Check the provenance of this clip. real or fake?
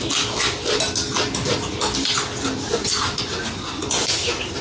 real